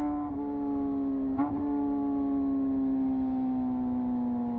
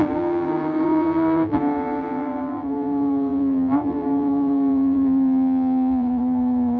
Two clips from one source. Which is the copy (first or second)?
second